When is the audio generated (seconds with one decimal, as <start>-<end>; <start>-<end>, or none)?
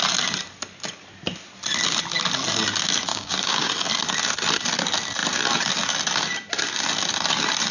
3.1-3.7